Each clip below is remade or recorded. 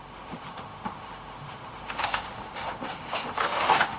remade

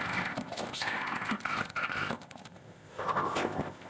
remade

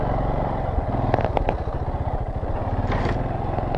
recorded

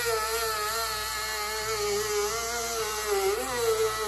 recorded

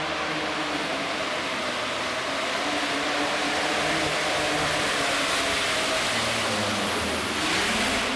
recorded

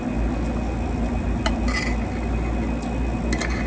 recorded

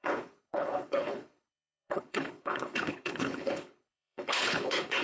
remade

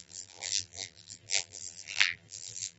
remade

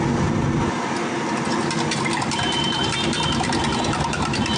recorded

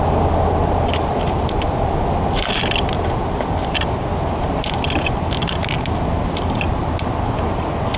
recorded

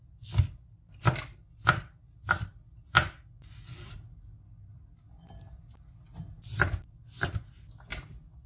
recorded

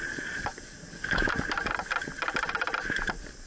recorded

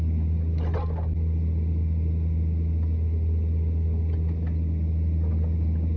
recorded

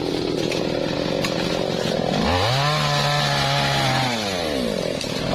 recorded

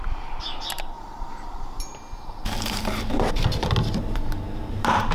remade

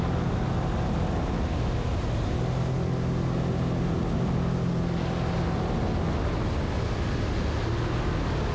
recorded